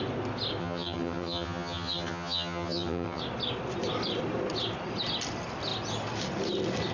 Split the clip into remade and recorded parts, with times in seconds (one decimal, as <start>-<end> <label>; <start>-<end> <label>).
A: 0.0-0.6 recorded; 0.6-3.2 remade; 3.2-6.9 recorded